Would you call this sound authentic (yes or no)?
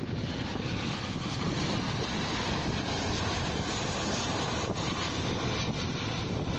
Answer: yes